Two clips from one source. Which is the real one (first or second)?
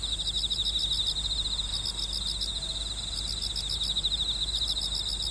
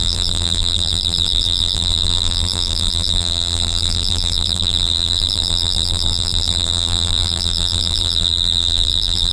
first